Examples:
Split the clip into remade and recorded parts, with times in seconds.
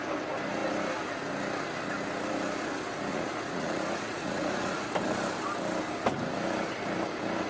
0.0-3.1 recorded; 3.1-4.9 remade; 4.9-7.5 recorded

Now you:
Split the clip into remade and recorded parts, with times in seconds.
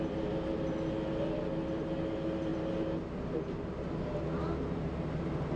0.0-5.6 recorded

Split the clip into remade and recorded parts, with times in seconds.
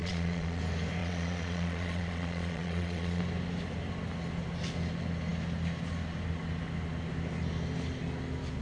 0.0-0.6 remade; 0.6-1.0 recorded; 1.0-3.2 remade; 3.2-8.6 recorded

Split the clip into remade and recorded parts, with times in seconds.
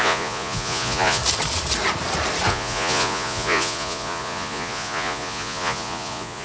0.0-1.2 remade; 1.2-2.5 recorded; 2.5-6.4 remade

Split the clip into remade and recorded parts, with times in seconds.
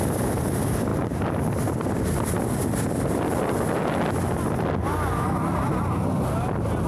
0.0-6.9 recorded